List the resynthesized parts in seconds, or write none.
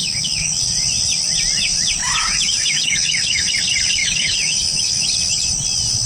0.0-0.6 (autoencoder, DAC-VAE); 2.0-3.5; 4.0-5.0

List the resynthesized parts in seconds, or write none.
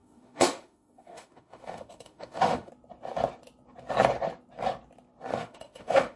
0.0-2.7 (autoencoder, DAC-VAE); 5.3-6.2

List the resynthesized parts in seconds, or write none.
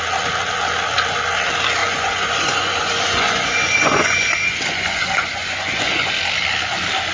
1.8-6.1 (vocoder, Vocos)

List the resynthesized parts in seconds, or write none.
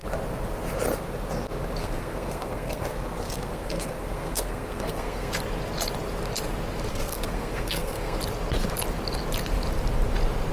1.8-5.3 (codec, SNAC); 6.9-8.2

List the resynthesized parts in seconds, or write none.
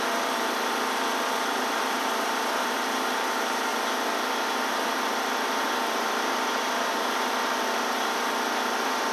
0.0-9.1 (vocoder, BigVGAN v2)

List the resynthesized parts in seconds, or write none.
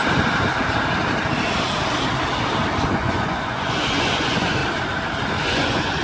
2.9-4.6 (vocoder, Vocos); 5.4-6.0